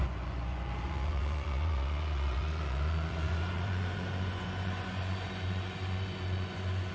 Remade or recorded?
remade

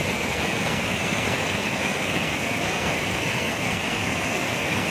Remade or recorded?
remade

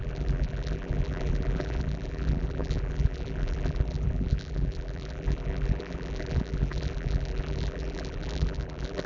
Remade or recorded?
remade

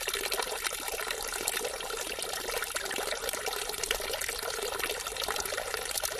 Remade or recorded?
remade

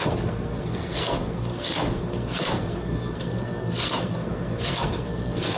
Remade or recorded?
remade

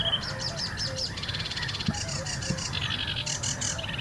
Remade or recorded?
recorded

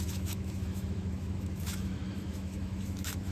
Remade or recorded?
remade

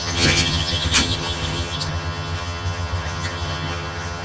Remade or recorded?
remade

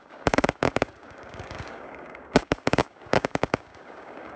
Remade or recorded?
remade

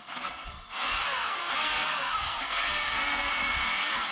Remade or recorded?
remade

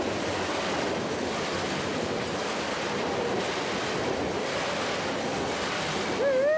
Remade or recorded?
recorded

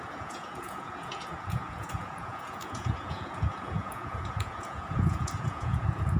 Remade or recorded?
remade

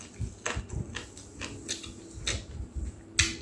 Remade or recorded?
recorded